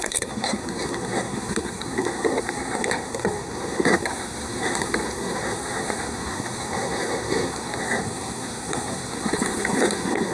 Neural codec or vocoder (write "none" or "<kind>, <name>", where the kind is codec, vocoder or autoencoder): codec, SNAC